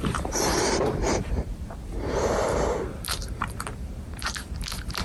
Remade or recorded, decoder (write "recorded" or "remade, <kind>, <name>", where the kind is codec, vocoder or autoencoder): remade, vocoder, BigVGAN v2